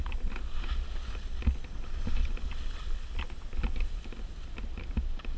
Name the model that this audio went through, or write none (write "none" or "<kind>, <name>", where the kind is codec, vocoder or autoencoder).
none